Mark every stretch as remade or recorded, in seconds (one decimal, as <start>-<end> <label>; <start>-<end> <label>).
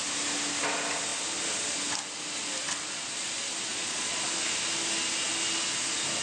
0.0-3.7 recorded; 3.7-4.2 remade; 4.2-6.2 recorded